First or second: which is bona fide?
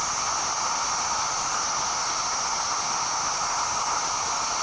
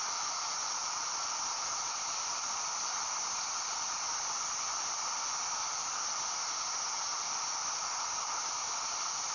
first